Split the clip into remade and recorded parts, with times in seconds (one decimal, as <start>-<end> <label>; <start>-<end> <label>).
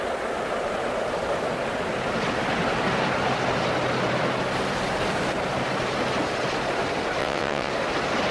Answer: 0.0-7.2 recorded; 7.2-7.7 remade; 7.7-8.3 recorded